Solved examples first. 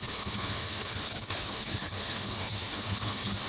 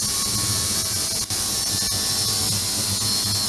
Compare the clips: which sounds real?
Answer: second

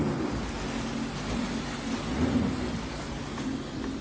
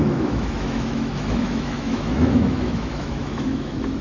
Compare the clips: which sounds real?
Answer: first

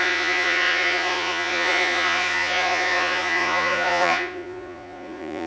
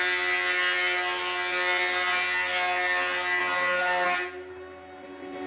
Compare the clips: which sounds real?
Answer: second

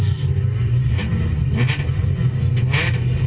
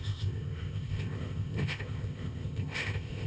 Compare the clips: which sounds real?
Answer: first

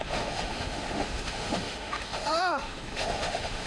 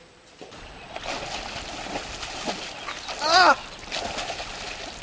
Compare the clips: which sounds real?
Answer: second